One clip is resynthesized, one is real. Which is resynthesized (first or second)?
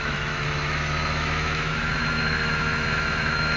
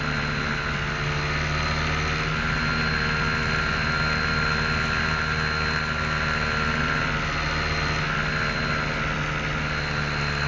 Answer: first